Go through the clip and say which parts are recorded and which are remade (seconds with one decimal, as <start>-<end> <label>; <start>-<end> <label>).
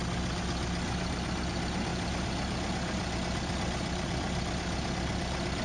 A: 0.0-5.6 recorded